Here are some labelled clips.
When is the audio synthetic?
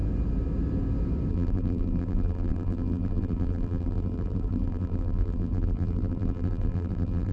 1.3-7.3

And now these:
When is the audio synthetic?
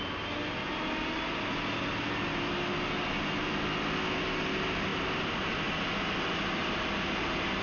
none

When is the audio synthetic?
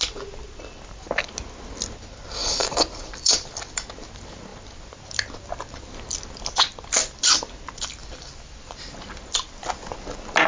2.4-3.3; 8.0-8.7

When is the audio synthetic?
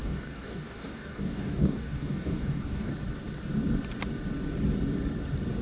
0.0-2.9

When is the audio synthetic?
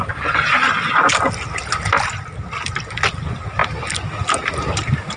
none